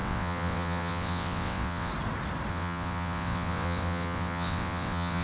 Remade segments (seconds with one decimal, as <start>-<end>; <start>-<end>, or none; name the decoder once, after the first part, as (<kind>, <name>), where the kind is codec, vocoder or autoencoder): 0.0-1.9 (vocoder, WaveNeXt); 2.5-5.2